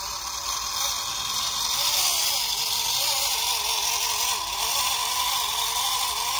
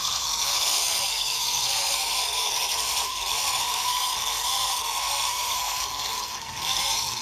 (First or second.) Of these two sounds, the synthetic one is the second